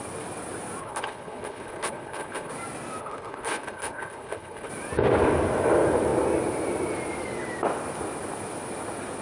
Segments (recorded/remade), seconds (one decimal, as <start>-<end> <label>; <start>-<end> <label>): 0.0-0.8 recorded; 0.8-2.5 remade; 2.5-3.0 recorded; 3.0-4.7 remade; 4.7-9.2 recorded